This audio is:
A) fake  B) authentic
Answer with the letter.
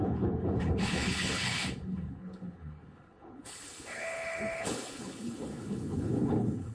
A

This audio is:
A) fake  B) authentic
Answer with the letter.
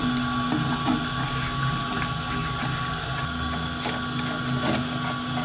B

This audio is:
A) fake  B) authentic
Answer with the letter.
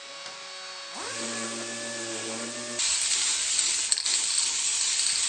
B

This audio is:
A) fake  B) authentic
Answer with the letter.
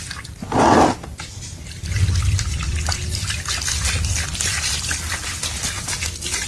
B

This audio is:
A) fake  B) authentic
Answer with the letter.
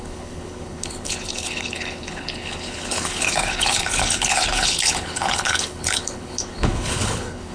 A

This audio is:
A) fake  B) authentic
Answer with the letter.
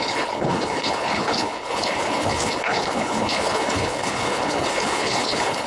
A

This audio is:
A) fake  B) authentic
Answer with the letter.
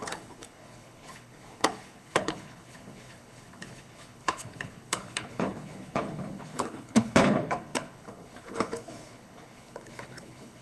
A